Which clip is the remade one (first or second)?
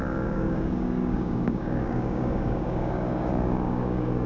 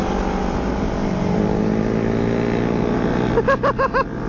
first